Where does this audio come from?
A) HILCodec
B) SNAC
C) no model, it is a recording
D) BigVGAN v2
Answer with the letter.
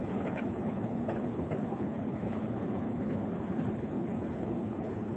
A